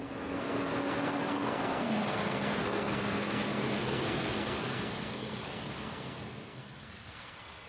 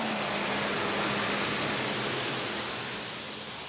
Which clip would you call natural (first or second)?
second